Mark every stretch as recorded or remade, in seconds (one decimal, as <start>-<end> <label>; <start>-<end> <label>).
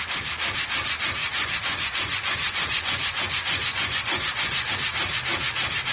0.0-1.2 recorded; 1.2-4.7 remade; 4.7-5.9 recorded